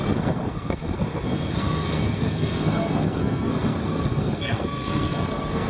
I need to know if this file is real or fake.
fake